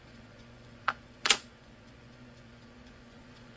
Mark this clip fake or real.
fake